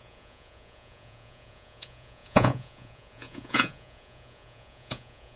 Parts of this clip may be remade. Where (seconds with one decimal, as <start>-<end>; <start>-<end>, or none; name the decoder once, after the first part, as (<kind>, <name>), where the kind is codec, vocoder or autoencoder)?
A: 0.0-5.4 (vocoder, Vocos)